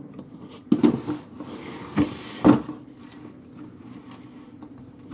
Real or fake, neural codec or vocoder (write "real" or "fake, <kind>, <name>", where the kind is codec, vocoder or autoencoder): real